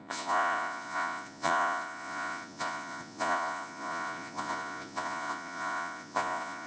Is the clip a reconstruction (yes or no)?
yes